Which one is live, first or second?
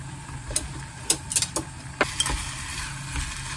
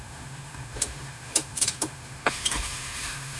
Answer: first